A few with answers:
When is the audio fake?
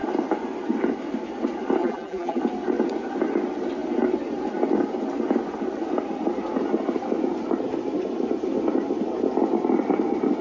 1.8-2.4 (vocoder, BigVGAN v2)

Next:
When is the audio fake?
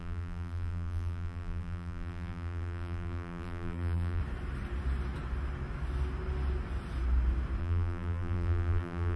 0.0-4.2 (vocoder, BigVGAN v2); 7.6-9.2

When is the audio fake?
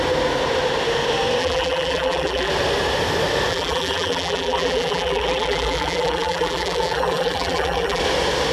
1.4-2.5 (vocoder, BigVGAN v2); 3.5-8.0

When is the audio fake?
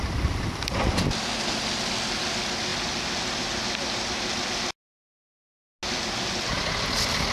none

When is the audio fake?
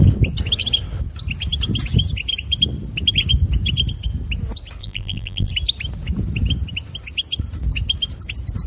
4.8-5.5 (vocoder, BigVGAN v2)